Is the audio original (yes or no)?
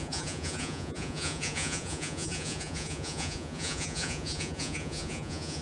no